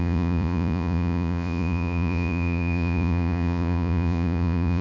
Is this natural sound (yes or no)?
no